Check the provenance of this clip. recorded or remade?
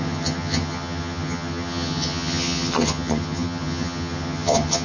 remade